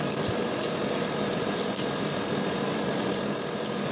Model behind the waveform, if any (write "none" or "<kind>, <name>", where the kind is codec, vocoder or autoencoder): vocoder, BigVGAN v2